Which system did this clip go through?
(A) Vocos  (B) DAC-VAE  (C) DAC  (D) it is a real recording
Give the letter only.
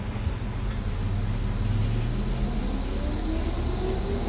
D